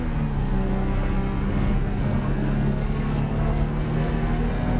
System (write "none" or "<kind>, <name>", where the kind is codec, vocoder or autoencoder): codec, SNAC